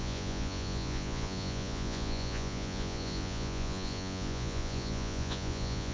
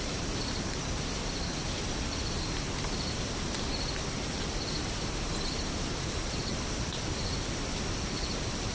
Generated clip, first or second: first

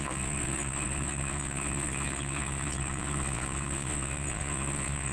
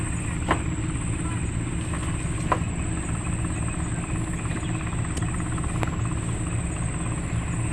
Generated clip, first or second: first